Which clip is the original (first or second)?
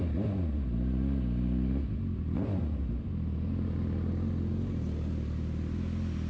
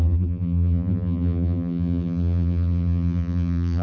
first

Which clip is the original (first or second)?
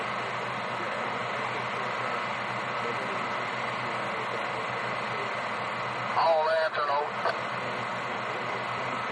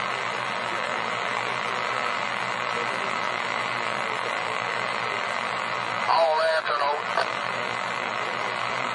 first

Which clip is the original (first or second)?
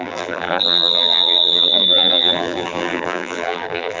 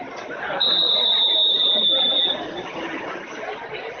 second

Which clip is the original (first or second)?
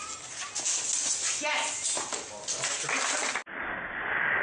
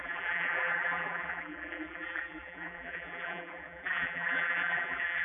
first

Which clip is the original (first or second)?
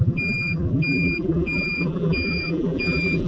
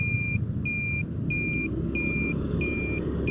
second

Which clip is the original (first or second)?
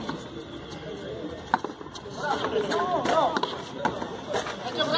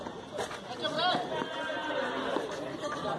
first